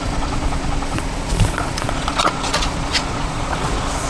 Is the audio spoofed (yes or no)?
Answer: yes